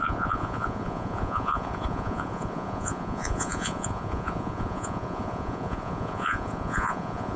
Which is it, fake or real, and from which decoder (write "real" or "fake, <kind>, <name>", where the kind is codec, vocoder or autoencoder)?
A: fake, vocoder, Vocos